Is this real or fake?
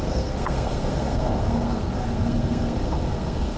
fake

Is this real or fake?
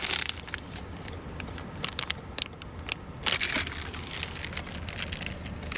real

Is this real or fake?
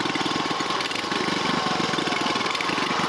real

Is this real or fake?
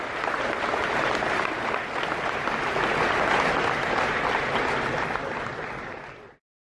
real